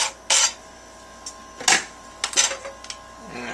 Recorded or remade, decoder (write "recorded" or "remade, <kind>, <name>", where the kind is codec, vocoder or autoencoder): recorded